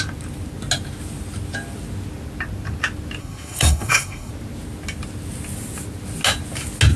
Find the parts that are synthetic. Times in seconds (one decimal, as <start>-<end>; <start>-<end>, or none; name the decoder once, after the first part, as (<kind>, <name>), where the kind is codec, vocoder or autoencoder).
3.2-4.3 (codec, SNAC)